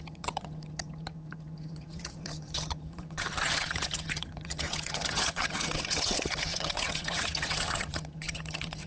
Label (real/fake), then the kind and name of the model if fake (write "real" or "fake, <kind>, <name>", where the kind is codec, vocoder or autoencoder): fake, vocoder, HiFi-GAN